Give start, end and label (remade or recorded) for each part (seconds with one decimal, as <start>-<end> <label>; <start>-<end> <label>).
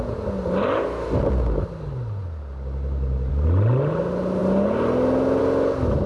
0.0-6.1 recorded